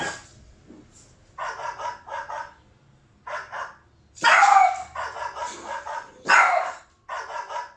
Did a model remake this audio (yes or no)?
no